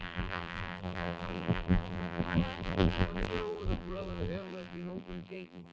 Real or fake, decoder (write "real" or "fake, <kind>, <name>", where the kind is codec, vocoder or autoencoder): fake, vocoder, BigVGAN v2